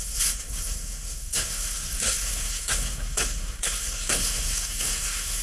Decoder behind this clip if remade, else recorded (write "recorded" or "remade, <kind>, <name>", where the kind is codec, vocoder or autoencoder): remade, codec, SNAC